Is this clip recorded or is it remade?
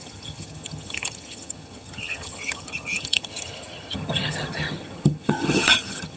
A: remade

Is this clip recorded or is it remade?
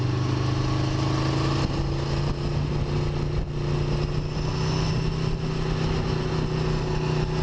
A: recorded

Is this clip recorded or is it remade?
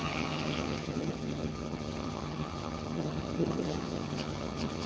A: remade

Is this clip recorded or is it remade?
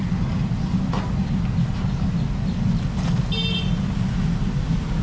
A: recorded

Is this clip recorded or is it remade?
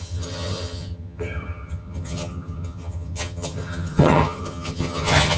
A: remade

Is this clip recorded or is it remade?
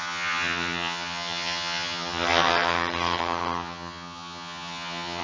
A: remade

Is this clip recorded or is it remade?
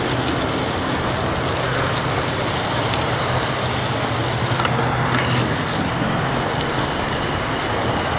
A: recorded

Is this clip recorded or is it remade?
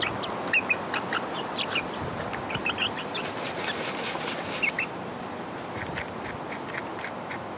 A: recorded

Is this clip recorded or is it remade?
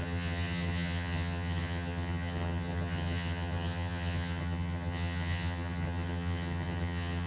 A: remade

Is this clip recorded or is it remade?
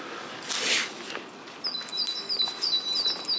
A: recorded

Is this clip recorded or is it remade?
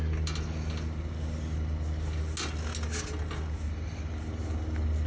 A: recorded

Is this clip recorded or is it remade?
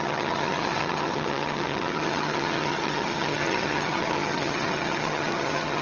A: remade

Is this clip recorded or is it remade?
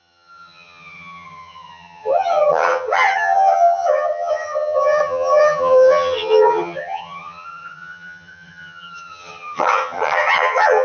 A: remade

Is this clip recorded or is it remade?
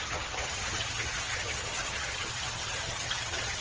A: remade